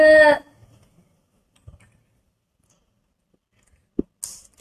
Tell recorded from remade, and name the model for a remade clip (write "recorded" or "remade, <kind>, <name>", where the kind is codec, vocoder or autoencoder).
recorded